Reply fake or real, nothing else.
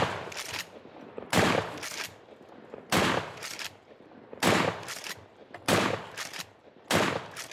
fake